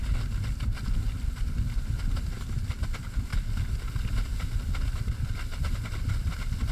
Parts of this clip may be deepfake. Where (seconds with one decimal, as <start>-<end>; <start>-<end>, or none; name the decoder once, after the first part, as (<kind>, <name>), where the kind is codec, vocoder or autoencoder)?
none

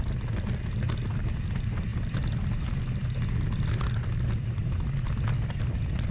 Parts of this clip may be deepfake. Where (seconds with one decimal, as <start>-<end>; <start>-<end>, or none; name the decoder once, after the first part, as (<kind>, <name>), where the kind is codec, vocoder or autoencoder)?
none

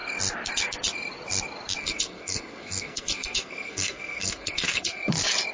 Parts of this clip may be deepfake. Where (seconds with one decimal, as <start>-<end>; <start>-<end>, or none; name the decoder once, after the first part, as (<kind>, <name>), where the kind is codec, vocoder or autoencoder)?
1.8-5.1 (codec, SNAC)

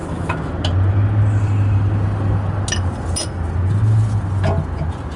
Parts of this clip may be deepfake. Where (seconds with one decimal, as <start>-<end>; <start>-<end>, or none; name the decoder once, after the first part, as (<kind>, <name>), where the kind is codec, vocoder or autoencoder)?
0.0-0.5 (autoencoder, DAC-VAE)

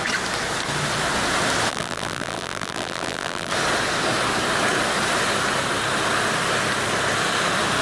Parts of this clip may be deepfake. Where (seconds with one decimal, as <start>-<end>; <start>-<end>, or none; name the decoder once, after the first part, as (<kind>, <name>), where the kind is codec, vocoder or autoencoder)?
1.7-3.5 (vocoder, BigVGAN v2)

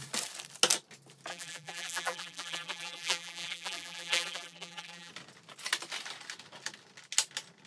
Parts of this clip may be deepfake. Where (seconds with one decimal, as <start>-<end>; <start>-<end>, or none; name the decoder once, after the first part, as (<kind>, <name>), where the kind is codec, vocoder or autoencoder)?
1.3-5.1 (vocoder, BigVGAN v2)